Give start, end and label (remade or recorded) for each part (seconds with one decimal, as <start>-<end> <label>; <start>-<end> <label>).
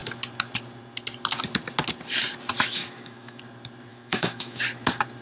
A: 0.0-2.7 recorded; 2.7-3.4 remade; 3.4-3.9 recorded; 3.9-4.6 remade; 4.6-5.2 recorded